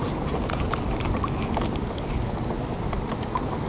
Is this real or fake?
real